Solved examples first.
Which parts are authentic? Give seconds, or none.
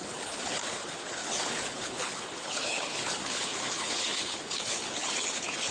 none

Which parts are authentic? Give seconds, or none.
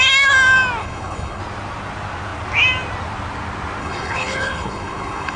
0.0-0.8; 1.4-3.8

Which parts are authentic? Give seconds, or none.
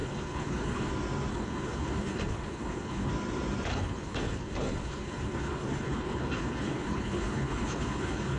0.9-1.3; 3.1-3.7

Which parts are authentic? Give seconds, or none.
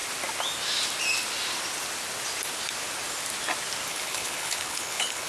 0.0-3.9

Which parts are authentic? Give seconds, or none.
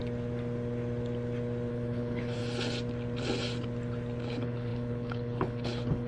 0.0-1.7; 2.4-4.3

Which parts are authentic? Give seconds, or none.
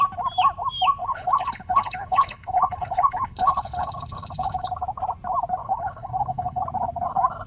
0.0-1.0; 4.7-5.6; 6.6-7.5